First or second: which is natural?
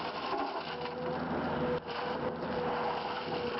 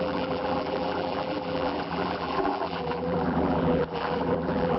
first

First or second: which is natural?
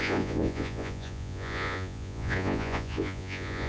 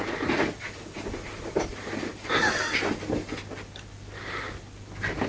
second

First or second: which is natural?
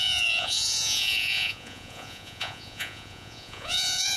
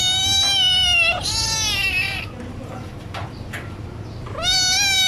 second